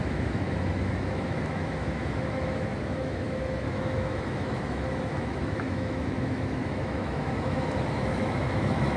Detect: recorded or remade remade